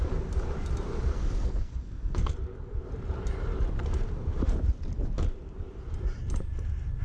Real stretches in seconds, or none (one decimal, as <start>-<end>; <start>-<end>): 0.0-1.1; 2.3-7.0